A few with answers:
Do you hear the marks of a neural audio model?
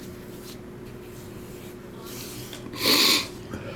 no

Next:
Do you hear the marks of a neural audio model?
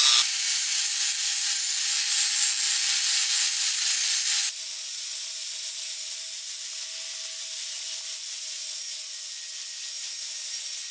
no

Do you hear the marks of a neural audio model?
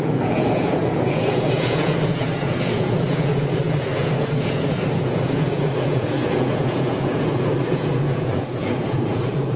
yes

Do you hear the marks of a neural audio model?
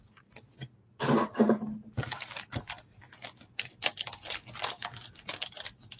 no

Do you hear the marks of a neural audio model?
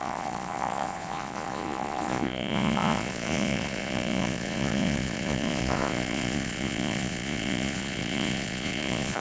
yes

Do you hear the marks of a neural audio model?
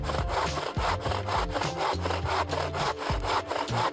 no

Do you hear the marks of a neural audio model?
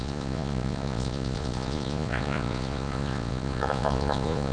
yes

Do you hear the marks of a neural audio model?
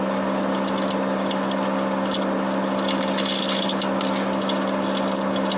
no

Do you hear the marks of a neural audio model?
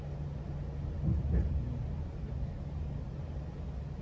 no